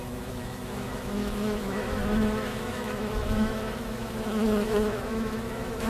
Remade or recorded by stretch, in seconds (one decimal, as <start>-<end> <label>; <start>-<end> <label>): 0.0-5.9 remade